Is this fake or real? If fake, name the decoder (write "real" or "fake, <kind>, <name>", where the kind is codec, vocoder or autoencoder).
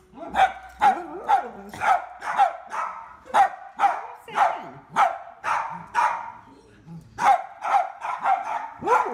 real